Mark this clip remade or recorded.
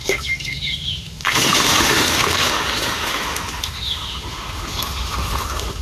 remade